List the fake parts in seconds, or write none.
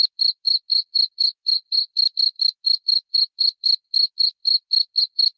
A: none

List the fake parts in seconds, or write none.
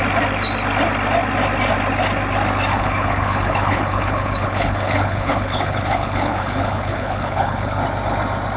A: 2.7-7.8 (codec, HILCodec)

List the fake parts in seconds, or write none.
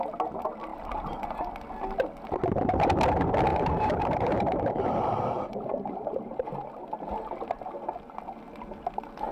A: 3.5-6.5 (vocoder, BigVGAN v2)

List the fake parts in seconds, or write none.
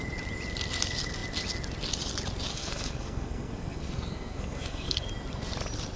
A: 2.5-5.1 (codec, SNAC)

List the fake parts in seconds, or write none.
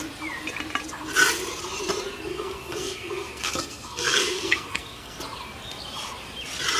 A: 2.3-5.2 (codec, SNAC)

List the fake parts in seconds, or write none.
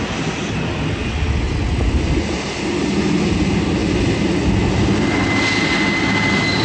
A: none